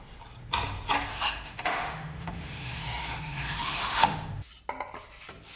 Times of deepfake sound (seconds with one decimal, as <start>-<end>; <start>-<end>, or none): 1.1-4.5